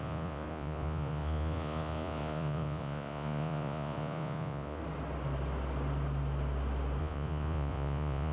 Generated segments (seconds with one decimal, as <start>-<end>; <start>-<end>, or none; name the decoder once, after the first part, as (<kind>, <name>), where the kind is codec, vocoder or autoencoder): 0.0-4.8 (vocoder, Vocos); 7.0-8.3